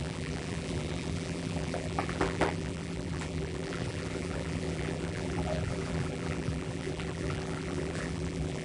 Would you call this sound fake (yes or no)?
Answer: yes